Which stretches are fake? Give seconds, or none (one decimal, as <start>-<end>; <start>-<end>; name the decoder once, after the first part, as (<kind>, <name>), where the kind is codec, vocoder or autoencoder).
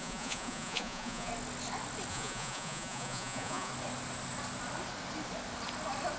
0.0-1.3 (vocoder, Vocos); 2.1-3.7